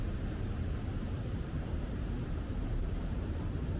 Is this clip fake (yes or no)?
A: yes